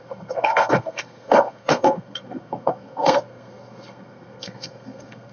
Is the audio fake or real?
fake